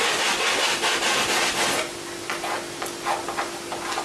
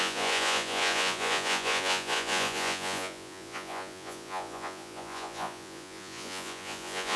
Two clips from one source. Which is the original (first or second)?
first